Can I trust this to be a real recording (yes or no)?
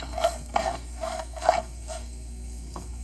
no